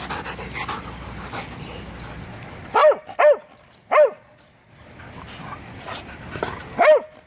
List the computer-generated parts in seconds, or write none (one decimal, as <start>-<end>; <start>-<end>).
none